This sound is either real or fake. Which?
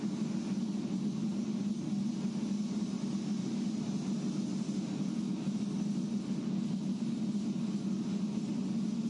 real